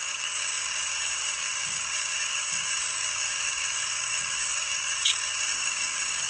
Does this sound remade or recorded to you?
remade